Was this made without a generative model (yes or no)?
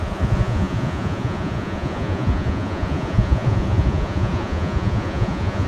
no